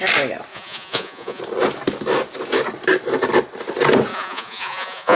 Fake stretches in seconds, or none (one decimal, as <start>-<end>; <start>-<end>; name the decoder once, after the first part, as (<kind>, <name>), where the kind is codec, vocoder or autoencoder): 0.5-1.4 (vocoder, Vocos); 4.1-5.2